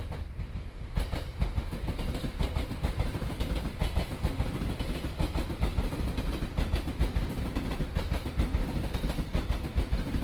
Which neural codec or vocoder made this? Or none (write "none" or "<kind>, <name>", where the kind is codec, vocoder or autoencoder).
vocoder, BigVGAN v2